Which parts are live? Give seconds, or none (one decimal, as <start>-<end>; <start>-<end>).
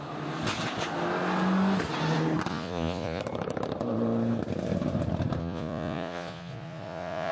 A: 0.0-2.5; 3.2-5.4